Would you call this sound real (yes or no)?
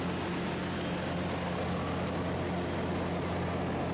yes